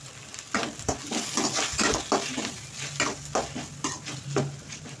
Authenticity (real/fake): real